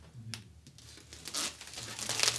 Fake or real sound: real